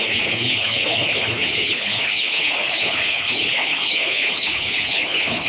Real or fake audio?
fake